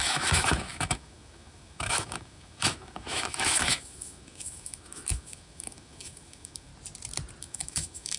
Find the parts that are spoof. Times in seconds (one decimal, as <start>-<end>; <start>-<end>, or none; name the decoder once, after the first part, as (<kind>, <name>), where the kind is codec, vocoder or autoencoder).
0.0-6.7 (autoencoder, DAC-VAE); 7.4-8.2